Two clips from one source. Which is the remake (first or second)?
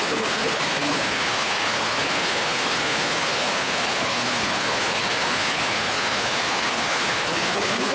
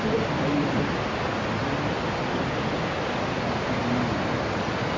first